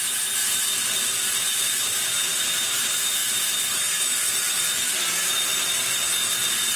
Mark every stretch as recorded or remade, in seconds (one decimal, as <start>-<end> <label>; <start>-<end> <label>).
0.0-6.8 recorded